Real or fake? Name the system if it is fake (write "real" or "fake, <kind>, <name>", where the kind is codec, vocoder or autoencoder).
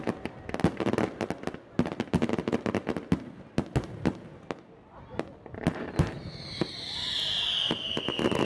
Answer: real